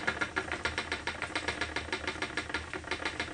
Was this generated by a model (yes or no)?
no